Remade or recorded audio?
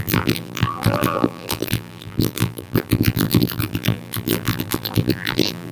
remade